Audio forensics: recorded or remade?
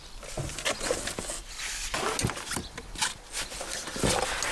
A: recorded